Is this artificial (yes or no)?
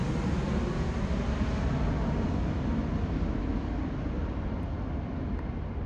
no